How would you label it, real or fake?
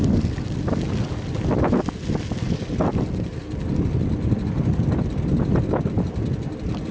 real